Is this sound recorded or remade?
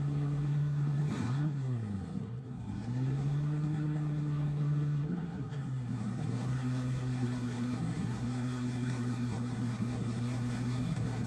remade